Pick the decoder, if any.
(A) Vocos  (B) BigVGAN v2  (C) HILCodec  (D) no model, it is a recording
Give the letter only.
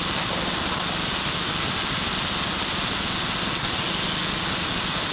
D